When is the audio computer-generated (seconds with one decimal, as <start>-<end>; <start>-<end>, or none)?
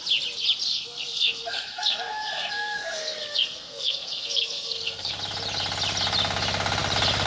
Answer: 0.7-5.1